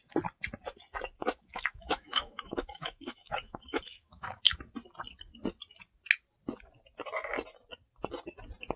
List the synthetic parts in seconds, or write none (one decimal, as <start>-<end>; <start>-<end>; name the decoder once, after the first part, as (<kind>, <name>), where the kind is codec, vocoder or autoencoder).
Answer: 1.2-4.4 (autoencoder, DAC-VAE)